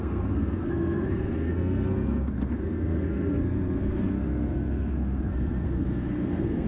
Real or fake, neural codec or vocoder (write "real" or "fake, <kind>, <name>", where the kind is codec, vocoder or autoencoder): fake, codec, SNAC